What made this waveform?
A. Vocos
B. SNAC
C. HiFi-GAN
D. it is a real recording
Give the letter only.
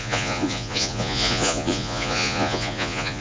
A